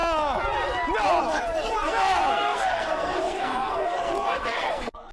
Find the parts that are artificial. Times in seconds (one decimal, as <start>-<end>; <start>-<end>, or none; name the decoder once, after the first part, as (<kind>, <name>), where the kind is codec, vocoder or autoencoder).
1.2-5.1 (codec, SNAC)